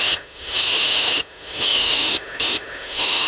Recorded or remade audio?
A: remade